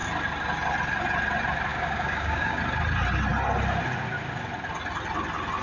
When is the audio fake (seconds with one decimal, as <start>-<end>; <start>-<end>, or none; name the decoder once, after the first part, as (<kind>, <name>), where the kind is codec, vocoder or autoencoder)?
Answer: 1.7-2.6 (codec, DAC)